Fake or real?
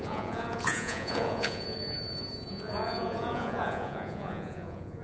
fake